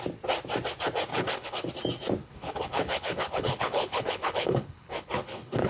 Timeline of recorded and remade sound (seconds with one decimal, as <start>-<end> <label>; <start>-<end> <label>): 0.0-1.1 recorded; 1.1-1.7 remade; 1.7-2.2 recorded; 2.2-5.7 remade